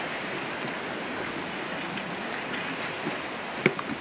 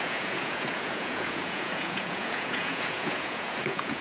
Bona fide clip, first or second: first